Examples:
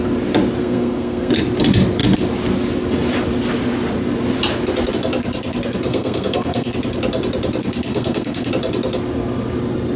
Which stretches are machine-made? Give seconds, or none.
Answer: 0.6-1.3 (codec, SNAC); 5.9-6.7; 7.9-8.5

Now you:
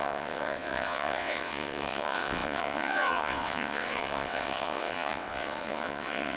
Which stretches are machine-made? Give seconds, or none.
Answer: 0.0-6.4 (vocoder, WaveNeXt)

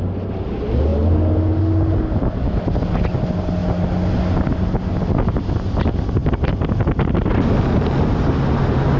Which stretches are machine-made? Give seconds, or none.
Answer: none

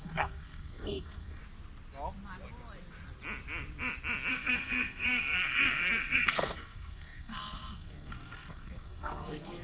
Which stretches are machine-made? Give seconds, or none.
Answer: 0.0-1.4 (codec, SNAC); 4.3-9.6

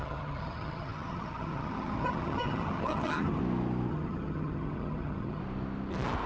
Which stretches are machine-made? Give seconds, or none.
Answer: 0.0-3.4 (vocoder, HiFi-GAN); 3.9-5.4

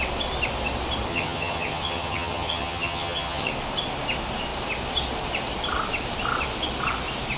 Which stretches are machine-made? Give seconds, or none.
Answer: 1.1-3.5 (vocoder, HiFi-GAN)

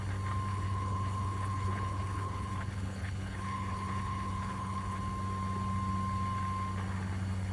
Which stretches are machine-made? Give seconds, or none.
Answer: 0.5-5.0 (codec, HILCodec)

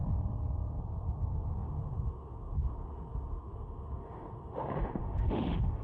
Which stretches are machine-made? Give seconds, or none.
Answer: 0.8-5.8 (autoencoder, DAC-VAE)